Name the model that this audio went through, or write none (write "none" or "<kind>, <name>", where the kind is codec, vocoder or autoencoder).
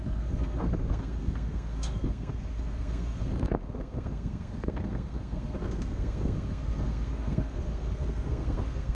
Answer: codec, SNAC